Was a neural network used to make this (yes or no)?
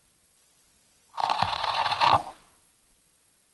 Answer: yes